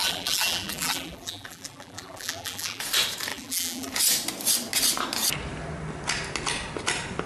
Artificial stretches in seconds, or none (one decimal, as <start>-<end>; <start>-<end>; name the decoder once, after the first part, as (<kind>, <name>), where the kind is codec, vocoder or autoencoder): 0.0-2.8 (vocoder, BigVGAN v2); 3.3-3.9